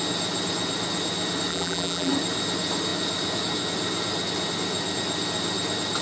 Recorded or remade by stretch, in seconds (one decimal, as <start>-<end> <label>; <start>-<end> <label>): 0.0-1.5 recorded; 1.5-2.1 remade; 2.1-6.0 recorded